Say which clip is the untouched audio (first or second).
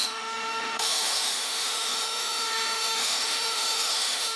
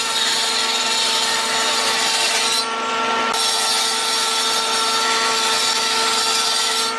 second